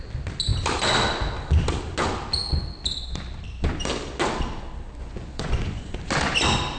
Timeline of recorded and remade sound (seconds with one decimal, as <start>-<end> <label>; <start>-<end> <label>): 0.0-5.0 recorded; 5.0-6.1 remade; 6.1-6.8 recorded